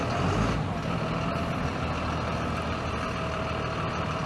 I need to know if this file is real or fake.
real